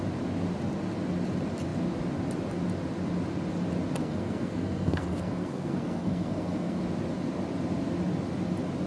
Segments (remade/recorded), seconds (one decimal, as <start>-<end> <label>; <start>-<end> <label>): 0.0-4.0 recorded; 4.0-6.8 remade; 6.8-8.9 recorded

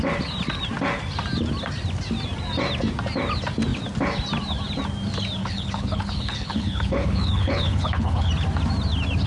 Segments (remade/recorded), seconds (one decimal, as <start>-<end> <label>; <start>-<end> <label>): 0.0-5.4 recorded; 5.4-8.3 remade; 8.3-9.3 recorded

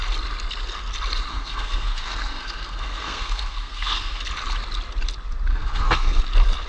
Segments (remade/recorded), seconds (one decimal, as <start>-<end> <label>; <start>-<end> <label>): 0.0-1.3 recorded; 1.3-4.2 remade; 4.2-5.5 recorded; 5.5-6.2 remade; 6.2-6.7 recorded

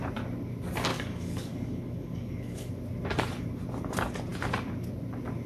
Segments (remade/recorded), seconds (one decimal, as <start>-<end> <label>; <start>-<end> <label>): 0.0-0.9 recorded; 0.9-2.7 remade; 2.7-5.5 recorded

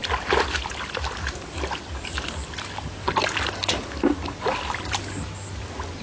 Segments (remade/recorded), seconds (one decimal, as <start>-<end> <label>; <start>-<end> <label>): 0.0-6.0 recorded

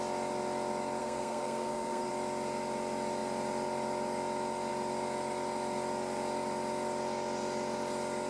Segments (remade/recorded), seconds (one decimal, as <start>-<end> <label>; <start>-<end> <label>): 0.0-1.0 recorded; 1.0-2.1 remade; 2.1-8.3 recorded

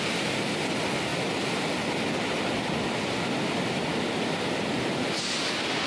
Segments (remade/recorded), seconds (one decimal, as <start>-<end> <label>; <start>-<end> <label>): 0.0-5.9 recorded

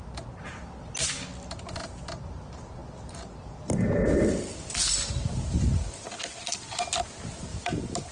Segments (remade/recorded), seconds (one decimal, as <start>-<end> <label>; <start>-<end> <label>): 0.0-8.1 recorded